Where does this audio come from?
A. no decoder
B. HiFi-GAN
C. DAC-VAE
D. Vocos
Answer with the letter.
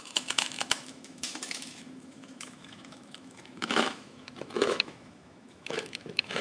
C